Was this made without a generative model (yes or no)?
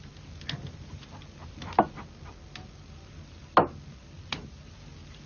yes